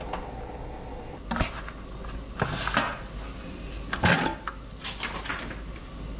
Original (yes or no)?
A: yes